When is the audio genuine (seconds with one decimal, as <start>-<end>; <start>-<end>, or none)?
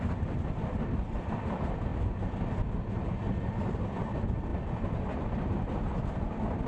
0.0-6.7